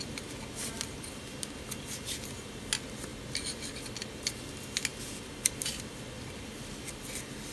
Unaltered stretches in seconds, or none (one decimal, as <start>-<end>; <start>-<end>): 0.0-4.9; 7.1-7.5